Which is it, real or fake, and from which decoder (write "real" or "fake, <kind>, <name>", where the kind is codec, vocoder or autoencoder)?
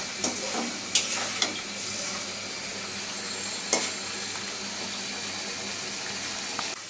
real